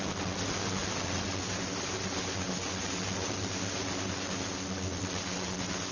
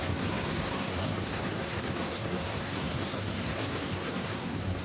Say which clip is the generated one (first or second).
second